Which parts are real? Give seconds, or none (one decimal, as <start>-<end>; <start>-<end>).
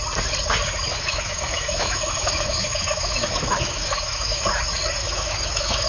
0.0-0.9; 4.4-5.0